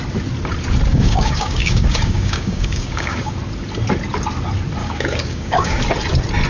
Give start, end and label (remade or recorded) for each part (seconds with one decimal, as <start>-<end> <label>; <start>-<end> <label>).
0.0-0.9 recorded; 0.9-3.3 remade; 3.3-4.8 recorded; 4.8-5.8 remade; 5.8-6.5 recorded